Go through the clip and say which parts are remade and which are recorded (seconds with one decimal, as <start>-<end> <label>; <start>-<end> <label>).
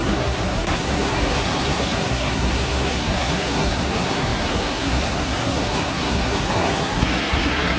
0.0-7.8 remade